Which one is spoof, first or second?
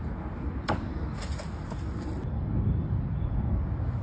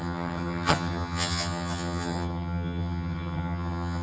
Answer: second